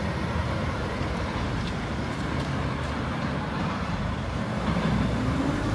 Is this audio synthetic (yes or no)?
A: yes